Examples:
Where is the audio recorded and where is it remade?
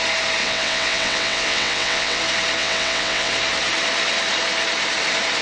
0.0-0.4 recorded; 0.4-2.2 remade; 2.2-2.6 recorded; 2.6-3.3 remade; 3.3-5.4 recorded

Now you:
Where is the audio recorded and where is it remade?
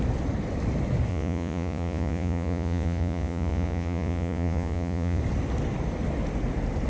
0.0-1.1 recorded; 1.1-5.2 remade; 5.2-6.9 recorded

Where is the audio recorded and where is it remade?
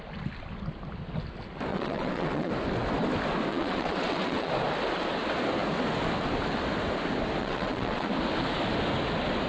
0.0-1.7 recorded; 1.7-2.5 remade; 2.5-3.5 recorded; 3.5-4.5 remade; 4.5-7.4 recorded; 7.4-8.1 remade; 8.1-9.5 recorded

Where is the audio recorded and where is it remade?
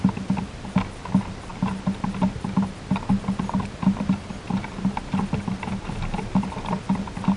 0.0-7.4 recorded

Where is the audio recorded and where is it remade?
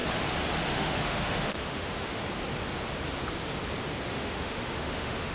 0.0-0.7 recorded; 0.7-2.2 remade; 2.2-4.0 recorded; 4.0-5.3 remade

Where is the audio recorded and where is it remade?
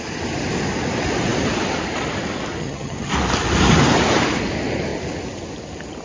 0.0-2.6 recorded; 2.6-3.1 remade; 3.1-6.0 recorded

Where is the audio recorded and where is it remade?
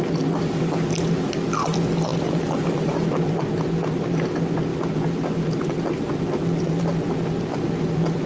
0.0-8.3 recorded